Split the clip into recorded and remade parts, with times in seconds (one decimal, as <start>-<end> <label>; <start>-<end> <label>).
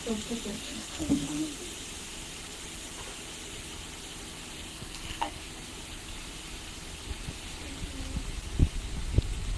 0.0-0.6 recorded; 0.6-1.4 remade; 1.4-4.7 recorded; 4.7-5.4 remade; 5.4-9.6 recorded